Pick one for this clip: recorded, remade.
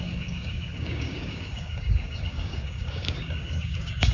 remade